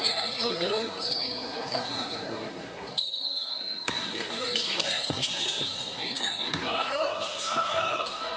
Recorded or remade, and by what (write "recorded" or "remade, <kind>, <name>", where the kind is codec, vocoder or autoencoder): remade, codec, SNAC